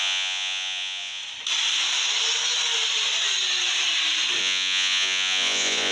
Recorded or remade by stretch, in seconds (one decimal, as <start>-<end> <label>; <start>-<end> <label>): 0.0-1.2 remade; 1.2-4.4 recorded; 4.4-5.9 remade